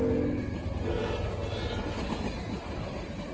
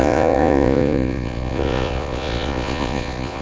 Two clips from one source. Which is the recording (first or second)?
first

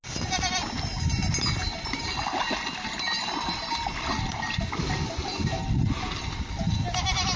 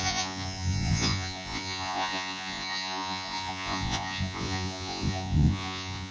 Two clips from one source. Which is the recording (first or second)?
first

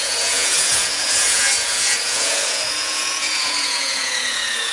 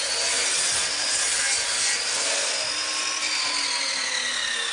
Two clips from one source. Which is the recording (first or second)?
second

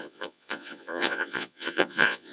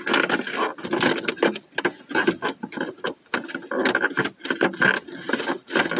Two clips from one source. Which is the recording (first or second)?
second